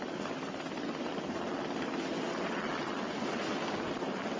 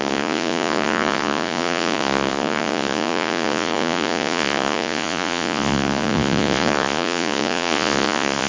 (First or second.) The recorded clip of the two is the first